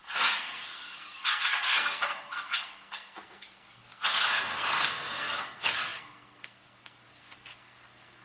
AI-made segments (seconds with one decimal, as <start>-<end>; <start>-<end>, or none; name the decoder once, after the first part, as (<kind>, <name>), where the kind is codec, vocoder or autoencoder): 0.0-8.2 (codec, SNAC)